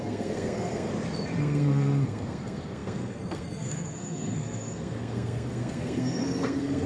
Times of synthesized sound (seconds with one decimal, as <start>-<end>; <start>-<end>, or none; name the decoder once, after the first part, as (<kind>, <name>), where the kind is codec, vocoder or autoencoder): 0.0-0.9 (codec, SNAC); 1.4-6.9